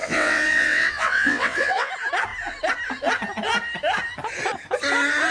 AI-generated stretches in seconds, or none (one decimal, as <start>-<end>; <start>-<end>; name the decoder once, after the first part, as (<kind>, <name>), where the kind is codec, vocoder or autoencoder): 0.0-1.9 (vocoder, WaveNeXt)